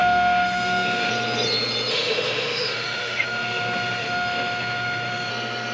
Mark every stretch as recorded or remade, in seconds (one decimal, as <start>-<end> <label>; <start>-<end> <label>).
0.0-1.1 remade; 1.1-1.9 recorded; 1.9-5.3 remade; 5.3-5.7 recorded